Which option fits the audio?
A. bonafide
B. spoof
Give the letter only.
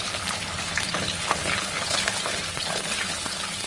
B